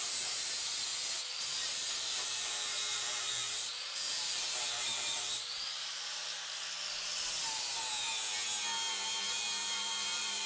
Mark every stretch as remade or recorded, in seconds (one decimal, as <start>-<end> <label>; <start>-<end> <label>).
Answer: 0.0-6.2 remade; 6.2-9.6 recorded; 9.6-10.5 remade